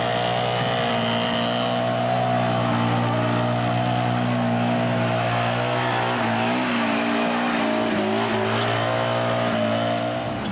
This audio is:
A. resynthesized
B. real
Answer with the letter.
B